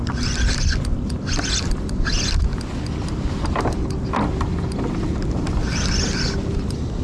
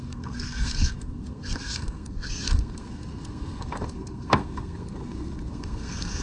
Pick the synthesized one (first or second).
second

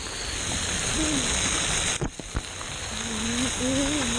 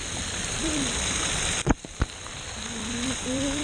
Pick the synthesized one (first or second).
second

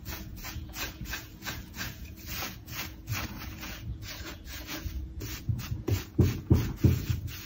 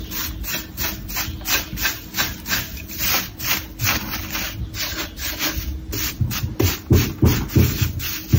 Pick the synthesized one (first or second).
first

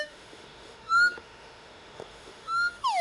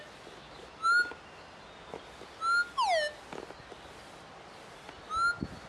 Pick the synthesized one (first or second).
first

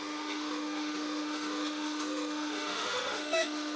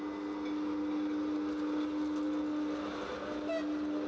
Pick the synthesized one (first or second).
first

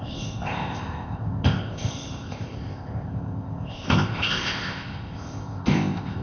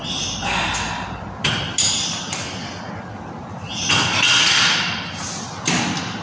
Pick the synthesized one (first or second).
first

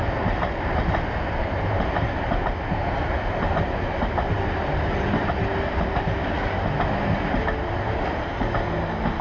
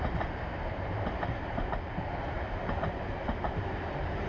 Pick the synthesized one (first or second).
second